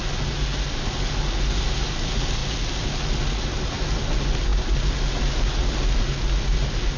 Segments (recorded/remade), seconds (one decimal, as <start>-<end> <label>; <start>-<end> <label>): 0.0-7.0 recorded